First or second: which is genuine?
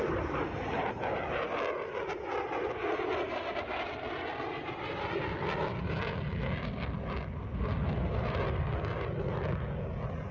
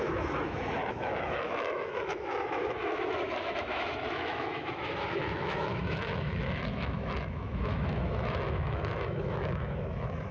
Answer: first